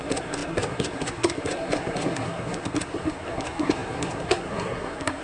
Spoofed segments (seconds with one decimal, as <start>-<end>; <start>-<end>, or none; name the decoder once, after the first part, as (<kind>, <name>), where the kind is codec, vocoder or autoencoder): 0.0-5.2 (codec, SNAC)

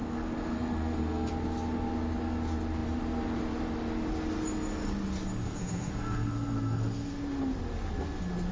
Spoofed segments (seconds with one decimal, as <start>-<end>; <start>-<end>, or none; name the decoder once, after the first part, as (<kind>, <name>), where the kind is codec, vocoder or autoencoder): 0.0-1.3 (codec, SNAC); 5.4-7.1

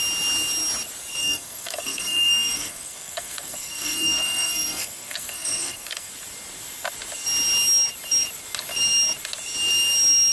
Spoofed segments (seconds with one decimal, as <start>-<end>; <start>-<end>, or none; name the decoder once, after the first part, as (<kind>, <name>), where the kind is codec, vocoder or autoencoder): 1.2-6.1 (codec, SNAC)

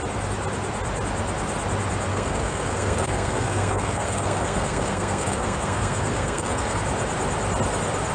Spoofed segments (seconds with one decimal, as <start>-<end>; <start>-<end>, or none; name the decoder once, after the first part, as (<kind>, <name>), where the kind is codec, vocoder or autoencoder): 2.1-6.8 (codec, SNAC)

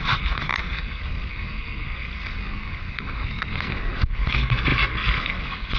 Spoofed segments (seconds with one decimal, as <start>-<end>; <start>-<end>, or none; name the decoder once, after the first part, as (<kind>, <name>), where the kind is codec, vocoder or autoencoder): 0.0-5.8 (codec, SNAC)

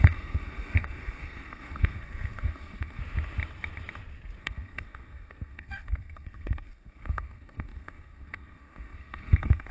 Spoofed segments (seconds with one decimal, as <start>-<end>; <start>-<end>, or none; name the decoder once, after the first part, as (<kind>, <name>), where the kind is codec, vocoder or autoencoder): 0.0-3.0 (codec, SNAC); 4.4-9.7

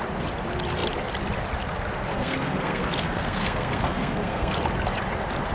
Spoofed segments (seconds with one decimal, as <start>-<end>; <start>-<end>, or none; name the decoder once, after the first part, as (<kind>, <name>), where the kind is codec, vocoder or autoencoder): 2.1-4.5 (codec, SNAC)

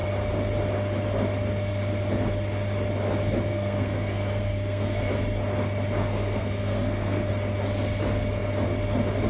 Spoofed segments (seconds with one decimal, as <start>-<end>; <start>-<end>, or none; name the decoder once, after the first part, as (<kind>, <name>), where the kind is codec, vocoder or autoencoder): 3.5-5.1 (codec, SNAC); 6.0-7.3